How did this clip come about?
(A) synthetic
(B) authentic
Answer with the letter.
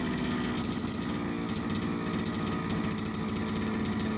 B